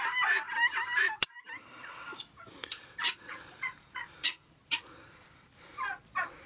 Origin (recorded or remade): remade